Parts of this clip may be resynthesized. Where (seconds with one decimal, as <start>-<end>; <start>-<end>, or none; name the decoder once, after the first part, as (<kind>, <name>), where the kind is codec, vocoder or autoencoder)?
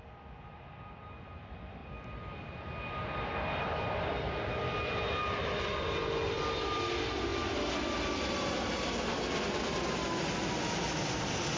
none